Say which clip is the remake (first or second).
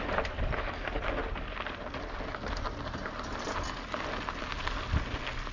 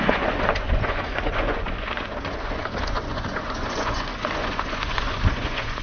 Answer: second